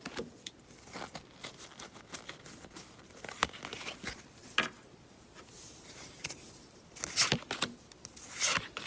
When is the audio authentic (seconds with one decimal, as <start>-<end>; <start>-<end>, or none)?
0.0-8.9